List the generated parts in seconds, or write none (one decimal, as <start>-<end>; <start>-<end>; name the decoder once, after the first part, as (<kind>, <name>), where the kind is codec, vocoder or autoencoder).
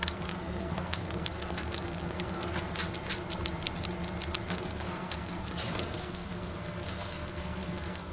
0.0-2.5 (codec, SNAC); 4.5-8.1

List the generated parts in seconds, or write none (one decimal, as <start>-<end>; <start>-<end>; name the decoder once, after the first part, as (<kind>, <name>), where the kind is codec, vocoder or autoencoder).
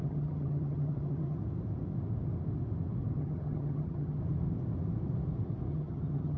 0.0-1.4 (vocoder, HiFi-GAN); 3.2-4.2; 5.7-6.4